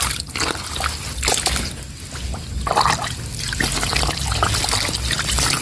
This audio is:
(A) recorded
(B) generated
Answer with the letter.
A